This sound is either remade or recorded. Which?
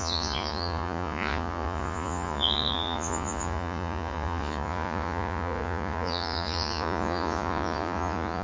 remade